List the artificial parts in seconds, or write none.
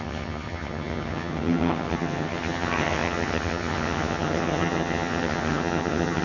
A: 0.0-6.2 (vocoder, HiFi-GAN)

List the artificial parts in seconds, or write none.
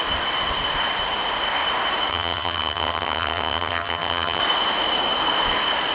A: 2.1-4.4 (vocoder, HiFi-GAN)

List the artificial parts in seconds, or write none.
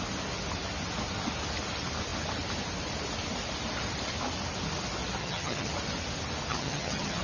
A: 5.2-5.7 (vocoder, HiFi-GAN); 6.5-7.2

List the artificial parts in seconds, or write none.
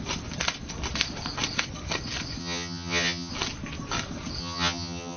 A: 2.4-3.3 (vocoder, HiFi-GAN); 4.4-5.2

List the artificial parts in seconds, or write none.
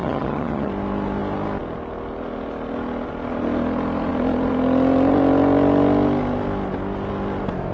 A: 0.0-0.7 (vocoder, HiFi-GAN)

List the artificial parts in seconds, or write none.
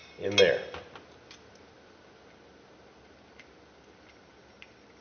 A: none